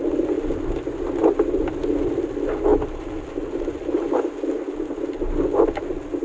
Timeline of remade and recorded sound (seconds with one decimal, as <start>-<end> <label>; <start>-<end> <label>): 0.0-6.2 recorded